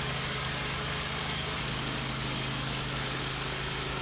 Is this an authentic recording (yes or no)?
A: no